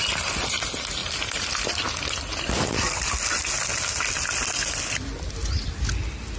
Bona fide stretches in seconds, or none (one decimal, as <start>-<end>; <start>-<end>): 0.0-6.4